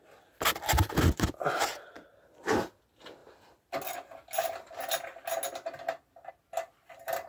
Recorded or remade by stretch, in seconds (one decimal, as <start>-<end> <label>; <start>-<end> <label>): 0.0-7.3 recorded

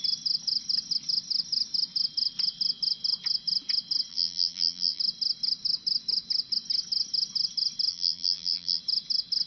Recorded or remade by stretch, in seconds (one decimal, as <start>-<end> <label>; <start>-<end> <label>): 0.0-4.1 recorded; 4.1-5.0 remade; 5.0-7.9 recorded; 7.9-8.8 remade; 8.8-9.5 recorded